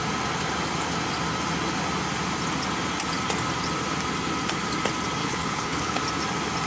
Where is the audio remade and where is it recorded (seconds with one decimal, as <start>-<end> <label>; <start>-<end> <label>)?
0.0-5.2 recorded; 5.2-6.0 remade; 6.0-6.7 recorded